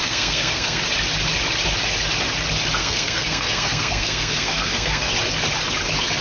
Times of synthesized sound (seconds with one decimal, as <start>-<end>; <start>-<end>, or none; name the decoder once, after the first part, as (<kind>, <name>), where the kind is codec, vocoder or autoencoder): 0.0-0.8 (codec, SNAC); 2.8-5.1